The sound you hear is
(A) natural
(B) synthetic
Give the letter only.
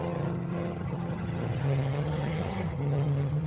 B